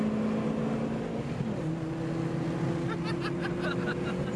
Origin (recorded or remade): recorded